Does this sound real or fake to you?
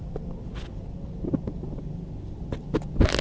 real